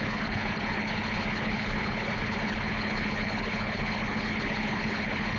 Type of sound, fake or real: fake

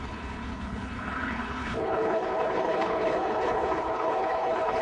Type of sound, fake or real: fake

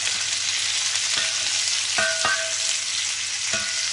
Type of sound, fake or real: real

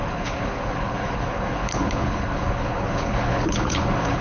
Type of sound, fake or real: fake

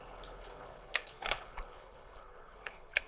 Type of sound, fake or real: fake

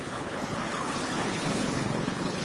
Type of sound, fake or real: fake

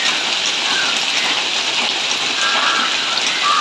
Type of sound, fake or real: real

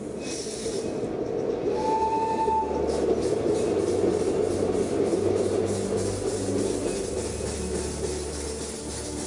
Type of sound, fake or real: real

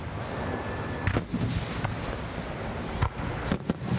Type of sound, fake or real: real